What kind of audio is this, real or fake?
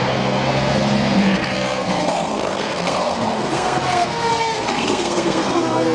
fake